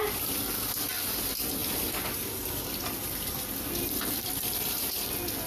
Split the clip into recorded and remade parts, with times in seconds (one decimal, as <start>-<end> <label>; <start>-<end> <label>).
0.0-1.6 recorded; 1.6-4.9 remade; 4.9-5.5 recorded